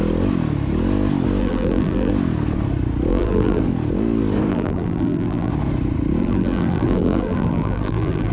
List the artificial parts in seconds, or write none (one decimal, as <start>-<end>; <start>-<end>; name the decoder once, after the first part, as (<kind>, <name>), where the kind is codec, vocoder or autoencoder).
1.4-2.1 (vocoder, BigVGAN v2); 3.1-3.6; 4.5-5.5; 6.2-8.3